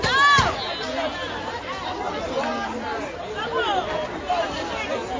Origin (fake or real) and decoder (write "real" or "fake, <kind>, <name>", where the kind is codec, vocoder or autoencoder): real